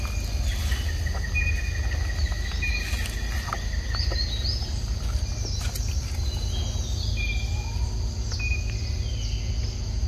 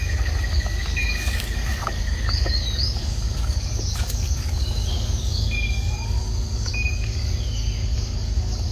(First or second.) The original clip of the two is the first